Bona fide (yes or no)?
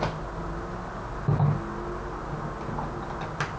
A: yes